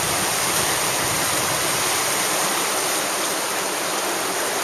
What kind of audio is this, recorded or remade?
recorded